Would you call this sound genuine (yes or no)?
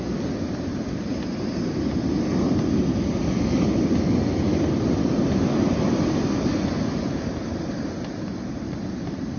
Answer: yes